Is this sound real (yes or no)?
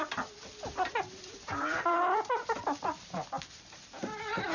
no